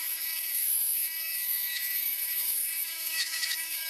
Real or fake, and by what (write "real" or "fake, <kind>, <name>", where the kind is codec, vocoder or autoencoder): fake, autoencoder, DAC-VAE